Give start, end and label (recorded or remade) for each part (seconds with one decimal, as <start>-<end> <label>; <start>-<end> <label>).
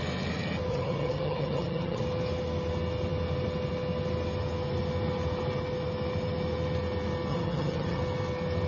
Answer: 0.0-0.7 recorded; 0.7-2.0 remade; 2.0-7.3 recorded; 7.3-8.0 remade; 8.0-8.7 recorded